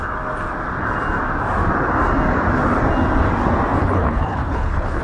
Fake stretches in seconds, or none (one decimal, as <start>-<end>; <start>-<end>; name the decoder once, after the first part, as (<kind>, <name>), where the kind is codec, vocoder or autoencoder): 3.8-5.0 (codec, HILCodec)